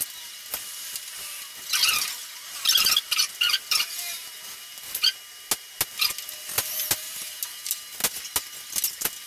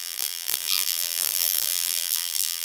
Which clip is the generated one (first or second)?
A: second